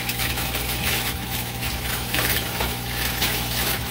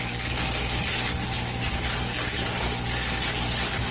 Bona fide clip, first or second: second